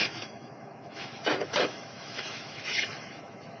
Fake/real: fake